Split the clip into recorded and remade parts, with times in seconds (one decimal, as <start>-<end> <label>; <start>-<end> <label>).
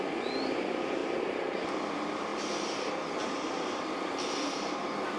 0.0-5.2 recorded